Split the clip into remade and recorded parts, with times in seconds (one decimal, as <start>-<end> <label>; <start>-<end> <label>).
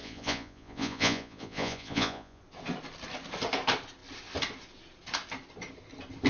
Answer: 0.0-2.4 remade; 2.4-6.3 recorded